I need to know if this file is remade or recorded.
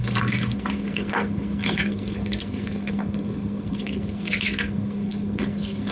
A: remade